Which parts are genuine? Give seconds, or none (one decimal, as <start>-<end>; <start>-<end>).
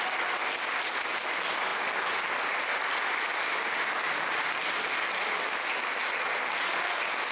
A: 0.0-7.3